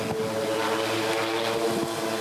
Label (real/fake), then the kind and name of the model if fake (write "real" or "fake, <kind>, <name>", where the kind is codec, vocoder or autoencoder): real